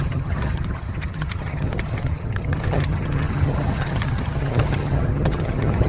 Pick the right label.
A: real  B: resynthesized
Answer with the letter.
B